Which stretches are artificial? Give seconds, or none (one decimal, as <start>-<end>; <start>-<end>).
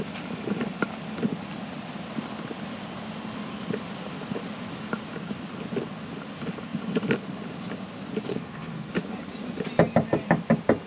8.3-8.9